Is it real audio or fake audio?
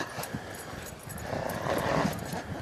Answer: real